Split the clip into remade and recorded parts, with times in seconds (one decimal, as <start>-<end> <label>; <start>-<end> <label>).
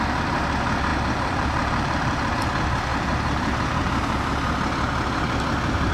0.0-0.9 recorded; 0.9-2.3 remade; 2.3-2.9 recorded; 2.9-3.8 remade; 3.8-5.9 recorded